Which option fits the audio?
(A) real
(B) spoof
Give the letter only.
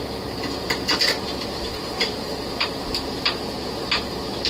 A